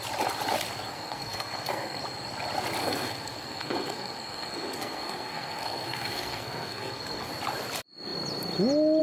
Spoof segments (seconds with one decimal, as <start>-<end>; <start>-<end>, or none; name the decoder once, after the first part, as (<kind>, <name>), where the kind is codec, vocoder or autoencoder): 0.9-2.0 (codec, SNAC); 2.8-7.3